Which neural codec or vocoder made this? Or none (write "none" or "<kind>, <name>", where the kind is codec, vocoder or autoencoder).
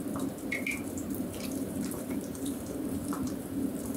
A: vocoder, BigVGAN v2